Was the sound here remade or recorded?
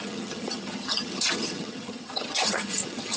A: remade